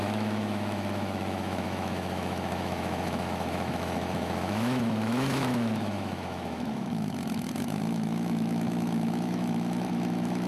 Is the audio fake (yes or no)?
yes